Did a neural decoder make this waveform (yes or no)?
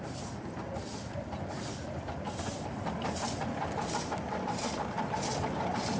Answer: yes